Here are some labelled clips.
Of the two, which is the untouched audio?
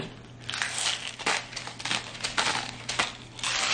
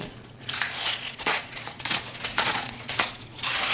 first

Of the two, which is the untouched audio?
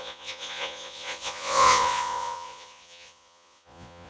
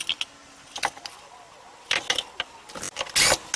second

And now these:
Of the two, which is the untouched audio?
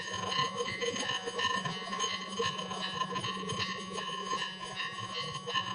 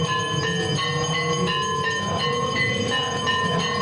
second